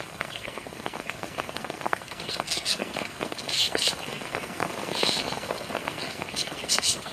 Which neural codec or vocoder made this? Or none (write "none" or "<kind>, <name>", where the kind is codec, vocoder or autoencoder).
codec, SNAC